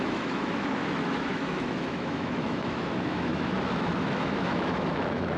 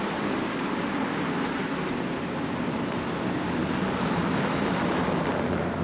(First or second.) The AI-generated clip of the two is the first